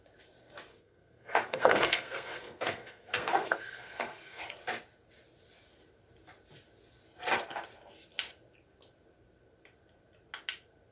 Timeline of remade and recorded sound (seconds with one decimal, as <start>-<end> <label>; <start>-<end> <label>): 0.0-0.7 recorded; 0.7-4.4 remade; 4.4-10.9 recorded